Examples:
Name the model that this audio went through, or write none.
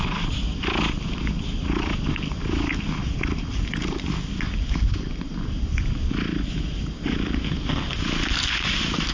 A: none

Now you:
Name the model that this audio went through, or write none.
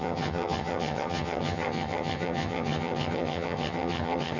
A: vocoder, HiFi-GAN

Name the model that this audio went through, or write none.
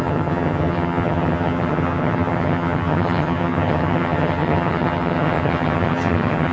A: vocoder, HiFi-GAN